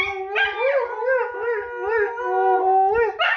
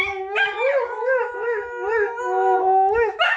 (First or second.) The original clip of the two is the first